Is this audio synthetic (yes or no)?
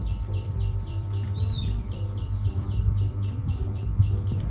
yes